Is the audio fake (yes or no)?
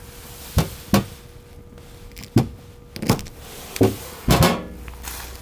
no